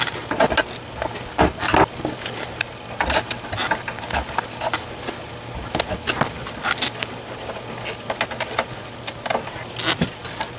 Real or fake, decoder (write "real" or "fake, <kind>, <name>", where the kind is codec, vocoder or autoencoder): real